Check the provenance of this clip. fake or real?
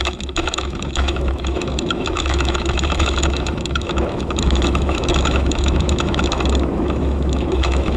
fake